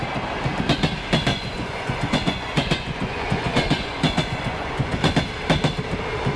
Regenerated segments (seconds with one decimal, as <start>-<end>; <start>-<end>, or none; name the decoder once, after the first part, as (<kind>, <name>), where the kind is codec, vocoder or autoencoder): 1.3-5.1 (vocoder, Vocos)